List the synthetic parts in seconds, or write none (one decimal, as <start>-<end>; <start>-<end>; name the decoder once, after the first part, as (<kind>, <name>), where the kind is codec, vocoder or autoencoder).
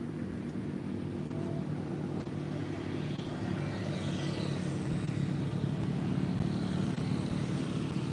none